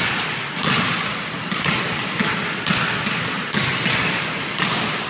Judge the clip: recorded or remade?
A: recorded